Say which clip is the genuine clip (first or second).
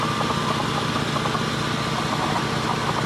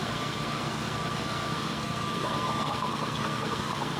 first